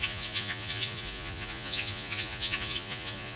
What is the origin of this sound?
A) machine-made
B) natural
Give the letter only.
A